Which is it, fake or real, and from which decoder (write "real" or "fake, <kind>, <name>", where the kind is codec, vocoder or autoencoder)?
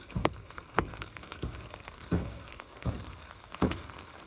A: fake, codec, SNAC